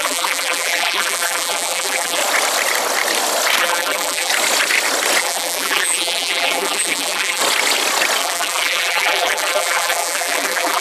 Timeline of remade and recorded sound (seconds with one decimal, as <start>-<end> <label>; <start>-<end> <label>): 0.0-2.2 remade; 2.2-3.6 recorded; 3.6-4.3 remade; 4.3-5.2 recorded; 5.2-7.4 remade; 7.4-8.2 recorded; 8.2-10.8 remade